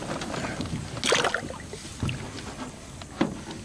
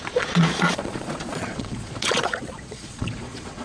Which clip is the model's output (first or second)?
second